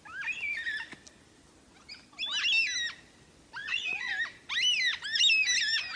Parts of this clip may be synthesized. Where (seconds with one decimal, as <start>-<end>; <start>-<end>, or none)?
3.6-4.1